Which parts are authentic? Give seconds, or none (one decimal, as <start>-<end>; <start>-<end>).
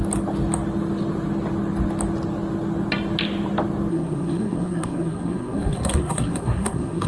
0.0-3.9